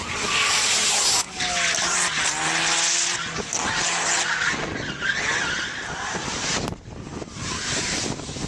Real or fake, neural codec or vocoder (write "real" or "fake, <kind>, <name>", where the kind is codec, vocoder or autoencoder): real